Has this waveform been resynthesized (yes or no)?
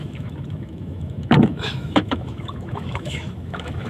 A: yes